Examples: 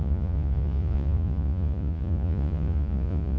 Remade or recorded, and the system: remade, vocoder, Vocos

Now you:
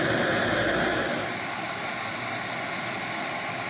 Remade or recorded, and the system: recorded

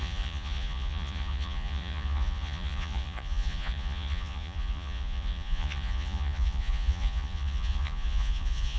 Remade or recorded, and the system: remade, vocoder, Vocos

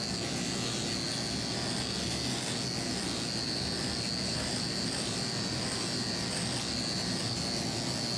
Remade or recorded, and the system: recorded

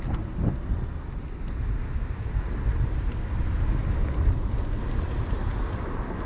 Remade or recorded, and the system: recorded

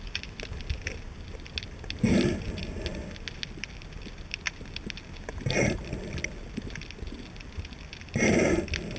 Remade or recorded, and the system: recorded